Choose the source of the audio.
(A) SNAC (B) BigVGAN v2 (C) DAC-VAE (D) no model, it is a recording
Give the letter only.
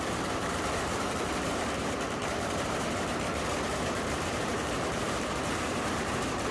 B